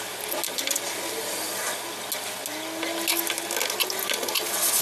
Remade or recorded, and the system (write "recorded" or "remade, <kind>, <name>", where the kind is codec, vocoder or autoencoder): recorded